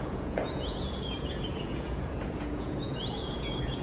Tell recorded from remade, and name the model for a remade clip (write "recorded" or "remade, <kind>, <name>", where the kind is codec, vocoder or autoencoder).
remade, vocoder, Vocos